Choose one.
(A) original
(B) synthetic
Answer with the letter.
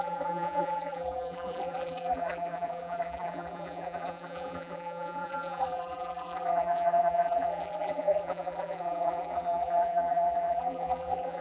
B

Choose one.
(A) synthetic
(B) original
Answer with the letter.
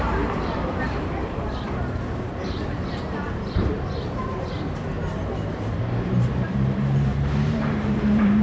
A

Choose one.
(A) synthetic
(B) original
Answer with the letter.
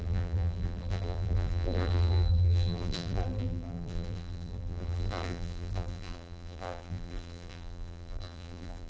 A